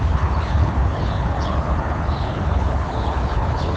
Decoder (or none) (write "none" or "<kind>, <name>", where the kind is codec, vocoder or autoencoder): codec, HILCodec